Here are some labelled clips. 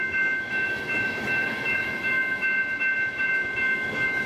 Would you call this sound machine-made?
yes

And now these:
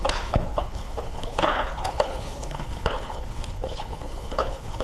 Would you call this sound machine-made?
yes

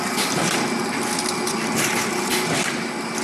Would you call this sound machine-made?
no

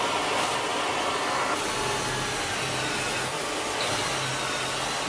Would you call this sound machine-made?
no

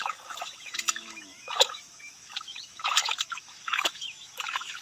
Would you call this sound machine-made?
yes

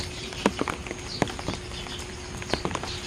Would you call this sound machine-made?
yes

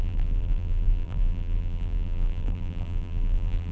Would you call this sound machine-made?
yes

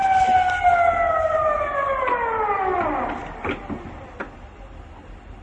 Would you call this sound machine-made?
no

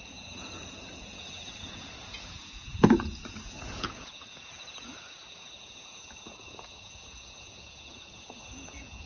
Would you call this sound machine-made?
yes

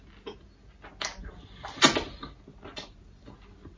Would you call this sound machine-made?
no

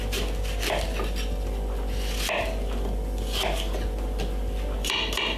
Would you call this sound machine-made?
no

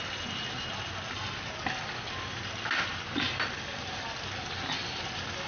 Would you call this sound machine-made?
no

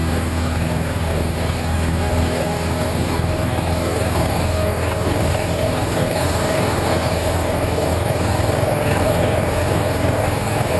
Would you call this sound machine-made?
yes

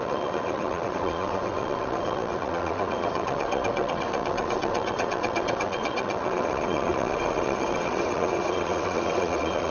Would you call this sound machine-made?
yes